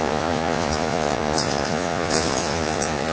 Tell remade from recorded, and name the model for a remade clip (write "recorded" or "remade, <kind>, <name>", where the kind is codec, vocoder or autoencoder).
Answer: remade, vocoder, Vocos